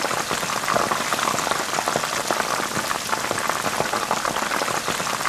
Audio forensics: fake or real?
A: real